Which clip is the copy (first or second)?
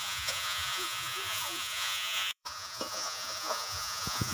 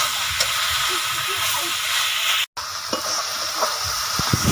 first